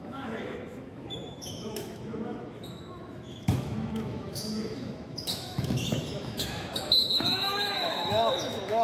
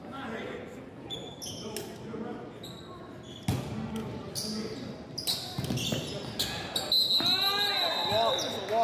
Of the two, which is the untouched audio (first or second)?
second